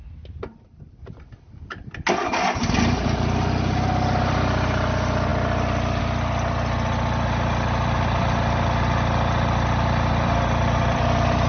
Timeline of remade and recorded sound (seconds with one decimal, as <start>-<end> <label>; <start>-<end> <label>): 0.0-11.5 recorded